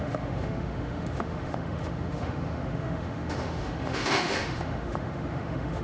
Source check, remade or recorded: remade